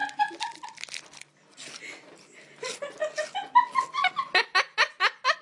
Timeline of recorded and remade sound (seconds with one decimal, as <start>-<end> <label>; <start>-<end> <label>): 0.0-5.4 recorded